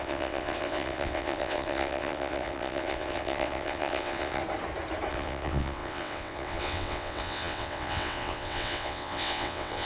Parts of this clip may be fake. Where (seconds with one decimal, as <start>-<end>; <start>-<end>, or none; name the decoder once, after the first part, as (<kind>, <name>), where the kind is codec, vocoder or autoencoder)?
0.0-4.4 (vocoder, WaveNeXt); 5.1-9.9

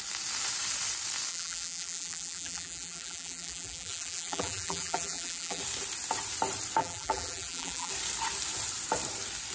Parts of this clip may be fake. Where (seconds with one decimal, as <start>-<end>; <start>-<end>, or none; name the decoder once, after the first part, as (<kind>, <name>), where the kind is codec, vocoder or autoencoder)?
1.3-5.6 (vocoder, BigVGAN v2); 6.8-7.9

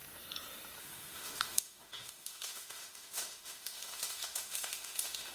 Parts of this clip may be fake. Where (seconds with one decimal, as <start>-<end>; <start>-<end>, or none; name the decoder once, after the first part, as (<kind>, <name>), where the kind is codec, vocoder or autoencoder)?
0.8-5.3 (autoencoder, DAC-VAE)

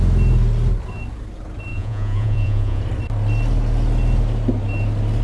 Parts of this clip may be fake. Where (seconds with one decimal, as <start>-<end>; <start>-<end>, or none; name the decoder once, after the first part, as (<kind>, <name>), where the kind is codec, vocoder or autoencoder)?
1.7-2.8 (vocoder, Vocos)